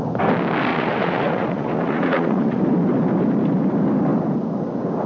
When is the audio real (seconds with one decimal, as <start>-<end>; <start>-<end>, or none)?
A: 0.0-0.7; 2.6-5.1